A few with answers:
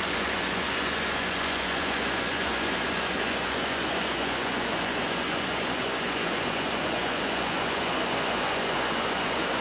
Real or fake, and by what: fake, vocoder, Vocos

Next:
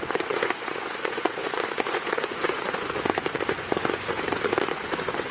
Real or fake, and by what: fake, vocoder, Vocos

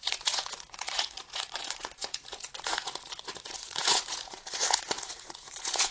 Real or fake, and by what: fake, vocoder, Vocos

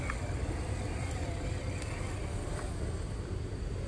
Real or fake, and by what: real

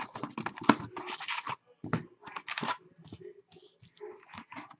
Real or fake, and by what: real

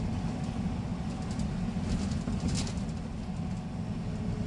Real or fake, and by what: real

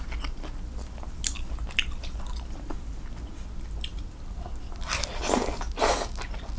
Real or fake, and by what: real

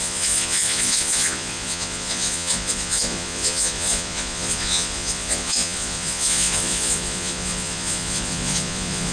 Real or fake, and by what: fake, vocoder, Vocos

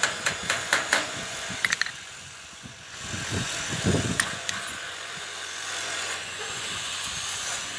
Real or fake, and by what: fake, vocoder, Vocos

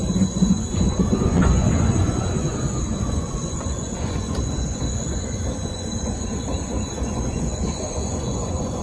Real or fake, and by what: fake, vocoder, Vocos